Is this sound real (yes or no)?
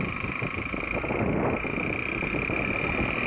yes